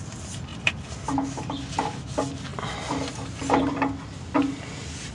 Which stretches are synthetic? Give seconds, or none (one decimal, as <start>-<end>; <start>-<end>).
none

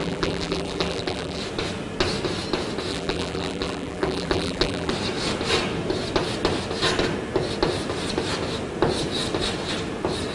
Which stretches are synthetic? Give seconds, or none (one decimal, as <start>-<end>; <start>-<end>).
0.0-1.4; 2.9-4.9

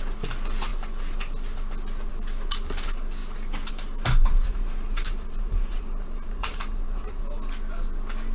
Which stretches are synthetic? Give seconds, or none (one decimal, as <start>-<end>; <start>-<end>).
4.2-7.2

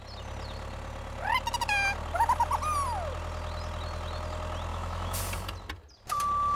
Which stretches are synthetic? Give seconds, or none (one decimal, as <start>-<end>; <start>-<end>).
4.7-5.2

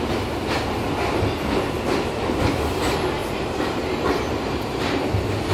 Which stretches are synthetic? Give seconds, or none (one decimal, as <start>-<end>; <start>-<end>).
3.2-5.0